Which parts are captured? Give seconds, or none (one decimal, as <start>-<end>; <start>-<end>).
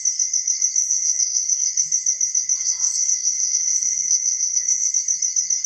0.0-0.8; 1.7-2.6; 4.9-5.7